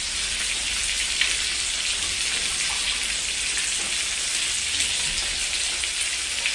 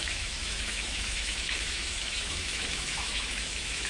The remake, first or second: second